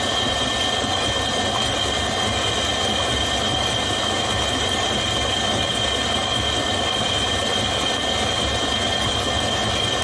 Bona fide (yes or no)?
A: yes